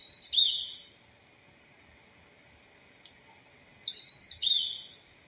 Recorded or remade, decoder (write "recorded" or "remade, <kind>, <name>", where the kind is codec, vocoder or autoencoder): recorded